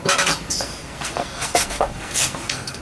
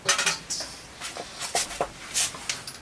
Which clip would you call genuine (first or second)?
second